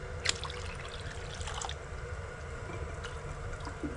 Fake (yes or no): no